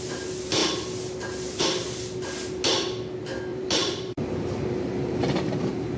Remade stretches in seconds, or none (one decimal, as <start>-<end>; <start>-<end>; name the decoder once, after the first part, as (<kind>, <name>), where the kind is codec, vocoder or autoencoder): 3.5-6.0 (vocoder, BigVGAN v2)